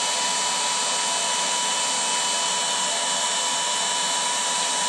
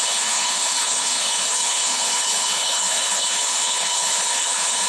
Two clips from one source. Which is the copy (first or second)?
second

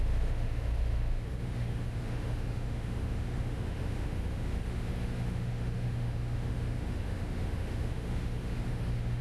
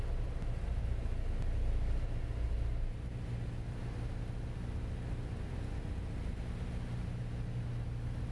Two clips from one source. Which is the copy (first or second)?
first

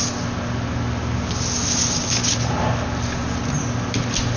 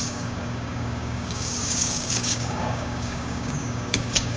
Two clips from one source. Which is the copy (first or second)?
second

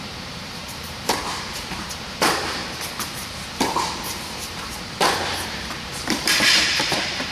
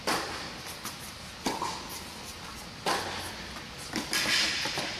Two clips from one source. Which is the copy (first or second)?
first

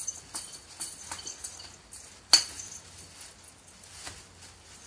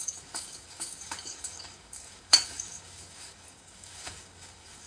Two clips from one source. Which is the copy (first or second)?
second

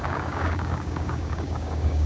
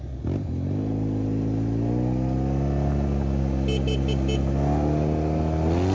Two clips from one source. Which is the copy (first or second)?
first